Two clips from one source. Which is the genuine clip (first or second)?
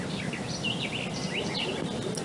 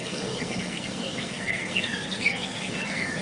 first